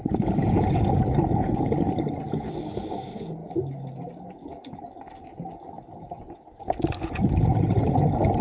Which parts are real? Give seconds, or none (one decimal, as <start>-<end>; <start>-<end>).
0.0-0.4; 1.0-8.4